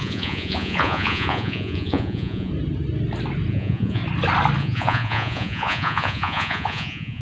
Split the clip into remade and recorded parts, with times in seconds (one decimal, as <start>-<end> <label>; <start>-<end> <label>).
0.0-2.5 remade; 2.5-3.5 recorded; 3.5-4.0 remade; 4.0-4.6 recorded; 4.6-7.2 remade